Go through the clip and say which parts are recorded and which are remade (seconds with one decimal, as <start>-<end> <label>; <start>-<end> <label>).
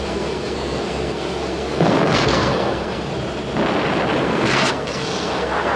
0.0-3.1 remade; 3.1-4.2 recorded; 4.2-5.8 remade